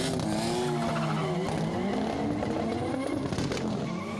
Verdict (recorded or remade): recorded